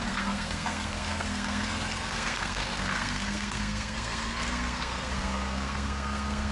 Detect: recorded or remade remade